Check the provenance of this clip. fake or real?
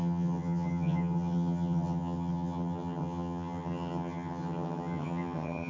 fake